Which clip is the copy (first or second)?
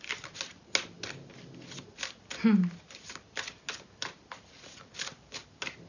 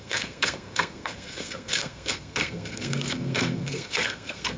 second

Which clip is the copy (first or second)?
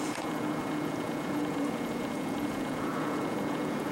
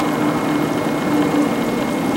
first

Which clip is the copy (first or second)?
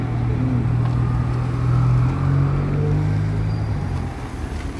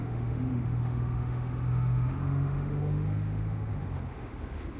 second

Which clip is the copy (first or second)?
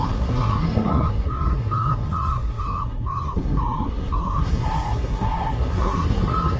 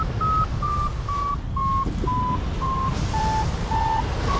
first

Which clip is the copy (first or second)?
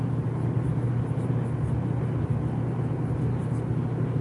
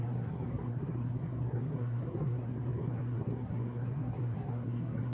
second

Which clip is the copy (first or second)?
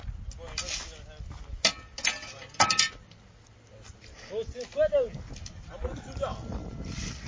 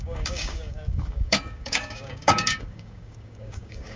second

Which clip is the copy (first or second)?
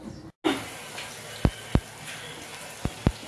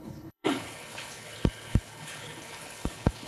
second